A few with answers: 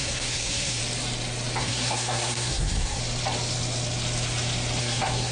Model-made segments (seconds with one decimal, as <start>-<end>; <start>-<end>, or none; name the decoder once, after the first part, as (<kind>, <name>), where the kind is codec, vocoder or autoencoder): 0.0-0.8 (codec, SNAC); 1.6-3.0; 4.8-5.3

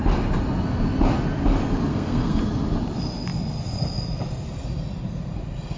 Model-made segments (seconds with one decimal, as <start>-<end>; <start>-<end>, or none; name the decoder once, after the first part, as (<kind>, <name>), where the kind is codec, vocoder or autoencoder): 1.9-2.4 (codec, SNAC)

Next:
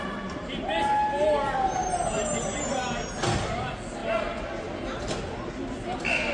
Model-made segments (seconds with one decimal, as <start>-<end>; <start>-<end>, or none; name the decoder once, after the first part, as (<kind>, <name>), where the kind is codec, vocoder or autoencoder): none

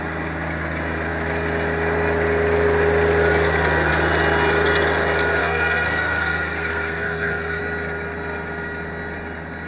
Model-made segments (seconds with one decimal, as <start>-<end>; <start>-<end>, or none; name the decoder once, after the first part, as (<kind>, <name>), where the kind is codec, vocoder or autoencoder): 5.4-7.6 (codec, SNAC)